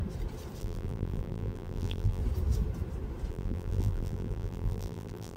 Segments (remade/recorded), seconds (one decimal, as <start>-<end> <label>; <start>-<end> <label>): 0.0-0.6 recorded; 0.6-2.2 remade; 2.2-3.3 recorded; 3.3-5.4 remade